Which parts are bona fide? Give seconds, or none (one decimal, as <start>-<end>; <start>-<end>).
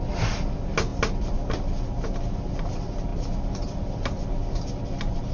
0.0-5.3